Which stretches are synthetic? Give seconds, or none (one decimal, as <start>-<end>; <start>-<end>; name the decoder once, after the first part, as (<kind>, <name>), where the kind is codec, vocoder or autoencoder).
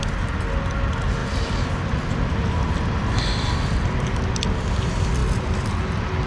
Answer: none